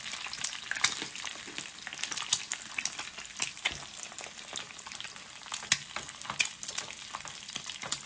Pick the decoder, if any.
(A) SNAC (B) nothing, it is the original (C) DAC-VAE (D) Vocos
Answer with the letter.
B